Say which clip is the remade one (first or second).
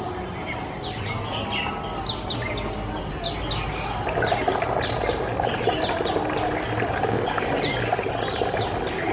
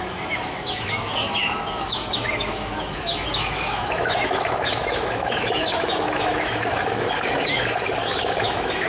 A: second